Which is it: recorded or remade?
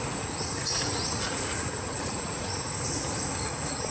remade